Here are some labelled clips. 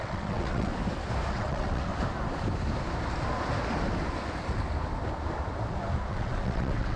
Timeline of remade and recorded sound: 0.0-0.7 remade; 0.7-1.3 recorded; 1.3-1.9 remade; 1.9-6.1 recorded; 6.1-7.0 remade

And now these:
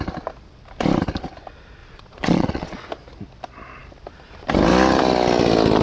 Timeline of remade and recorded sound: 0.0-1.8 recorded; 1.8-2.9 remade; 2.9-5.8 recorded

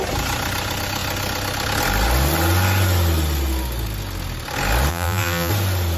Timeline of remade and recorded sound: 0.0-4.9 recorded; 4.9-5.5 remade; 5.5-6.0 recorded

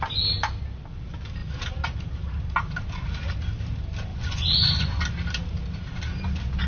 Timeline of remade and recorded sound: 0.0-4.1 recorded; 4.1-5.0 remade; 5.0-6.7 recorded

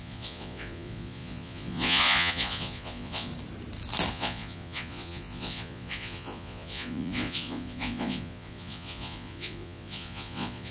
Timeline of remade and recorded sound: 0.0-3.3 remade; 3.3-4.1 recorded; 4.1-10.7 remade